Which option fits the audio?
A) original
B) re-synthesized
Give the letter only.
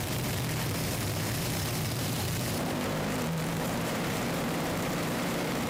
B